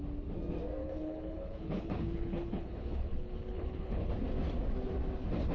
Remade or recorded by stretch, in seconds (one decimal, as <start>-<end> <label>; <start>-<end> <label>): 0.0-0.8 recorded; 0.8-4.1 remade; 4.1-5.5 recorded

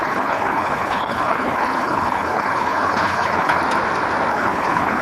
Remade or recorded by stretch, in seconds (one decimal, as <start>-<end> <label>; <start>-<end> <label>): 0.0-3.6 remade; 3.6-4.3 recorded; 4.3-5.0 remade